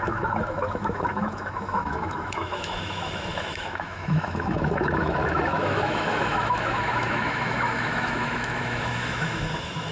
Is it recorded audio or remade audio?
remade